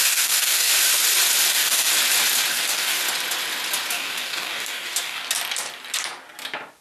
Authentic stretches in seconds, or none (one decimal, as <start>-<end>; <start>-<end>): 0.7-1.5; 1.9-2.5; 3.0-3.9; 5.2-6.8